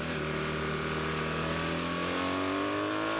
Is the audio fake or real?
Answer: real